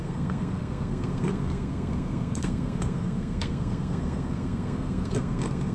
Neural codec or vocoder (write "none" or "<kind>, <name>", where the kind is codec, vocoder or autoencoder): codec, SNAC